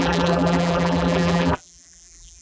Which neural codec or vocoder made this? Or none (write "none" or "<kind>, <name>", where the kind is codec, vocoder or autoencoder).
vocoder, BigVGAN v2